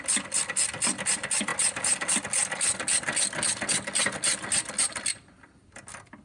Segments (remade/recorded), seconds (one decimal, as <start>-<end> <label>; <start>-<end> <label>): 0.0-6.2 recorded